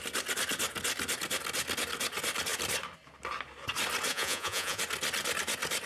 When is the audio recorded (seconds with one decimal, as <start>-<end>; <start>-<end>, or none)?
0.0-4.1; 4.8-5.9